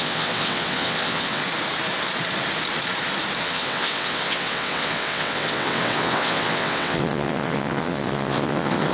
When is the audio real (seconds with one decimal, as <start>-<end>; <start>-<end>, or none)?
1.4-3.4